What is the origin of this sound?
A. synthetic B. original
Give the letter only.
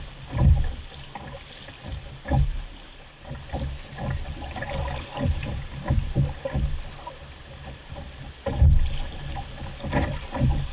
B